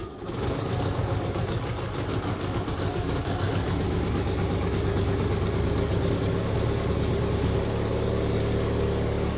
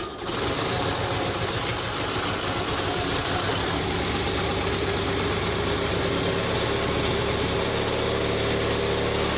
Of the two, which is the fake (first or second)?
first